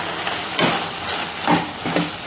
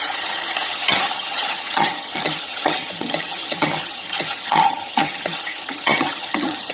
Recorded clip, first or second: first